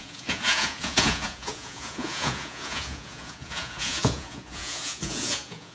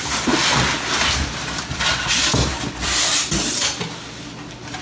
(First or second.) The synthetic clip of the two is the first